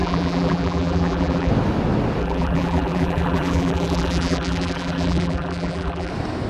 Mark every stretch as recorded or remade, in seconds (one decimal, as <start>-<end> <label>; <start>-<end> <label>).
0.0-1.5 remade; 1.5-2.2 recorded; 2.2-6.1 remade; 6.1-6.5 recorded